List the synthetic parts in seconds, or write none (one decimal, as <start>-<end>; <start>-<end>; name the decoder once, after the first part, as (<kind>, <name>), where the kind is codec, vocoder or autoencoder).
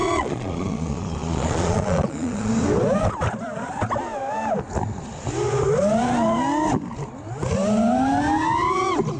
0.0-2.5 (vocoder, Vocos)